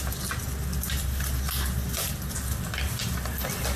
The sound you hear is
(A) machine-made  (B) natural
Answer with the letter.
B